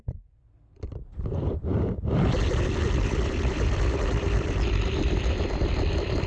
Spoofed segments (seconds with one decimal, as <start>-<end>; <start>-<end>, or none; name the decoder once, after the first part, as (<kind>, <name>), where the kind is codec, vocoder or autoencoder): 0.0-1.7 (vocoder, BigVGAN v2); 2.8-6.3